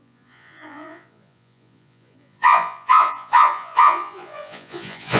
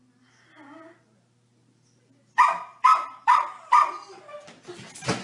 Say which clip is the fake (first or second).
first